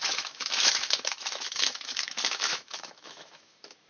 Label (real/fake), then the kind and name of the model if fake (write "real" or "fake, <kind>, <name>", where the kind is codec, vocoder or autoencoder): fake, autoencoder, DAC-VAE